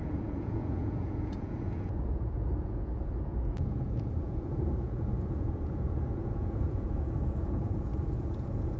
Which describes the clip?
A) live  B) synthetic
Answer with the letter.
B